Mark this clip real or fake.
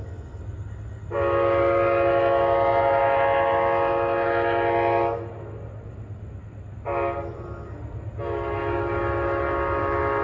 real